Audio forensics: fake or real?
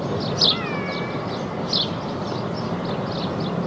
real